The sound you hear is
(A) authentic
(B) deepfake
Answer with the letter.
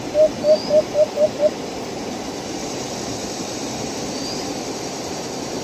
A